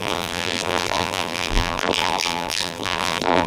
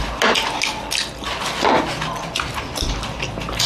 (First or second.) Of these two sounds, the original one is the second